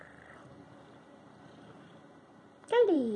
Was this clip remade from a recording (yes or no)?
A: yes